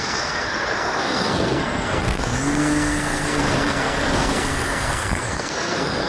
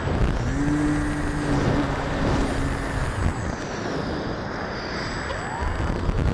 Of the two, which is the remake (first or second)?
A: first